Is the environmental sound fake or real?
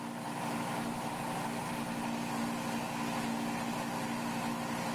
real